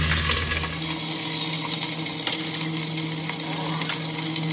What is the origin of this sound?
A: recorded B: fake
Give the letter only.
A